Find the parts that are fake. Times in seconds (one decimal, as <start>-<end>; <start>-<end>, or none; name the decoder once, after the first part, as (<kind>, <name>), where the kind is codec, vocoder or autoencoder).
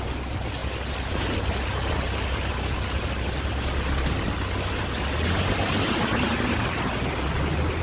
none